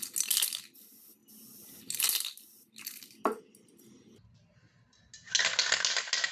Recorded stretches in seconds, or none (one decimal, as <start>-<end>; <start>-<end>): 0.0-6.3

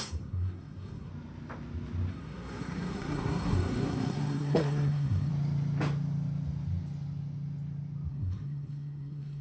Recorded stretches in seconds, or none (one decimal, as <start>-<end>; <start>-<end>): 1.1-2.1; 5.3-8.1